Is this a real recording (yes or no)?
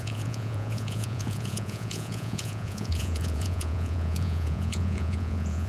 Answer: no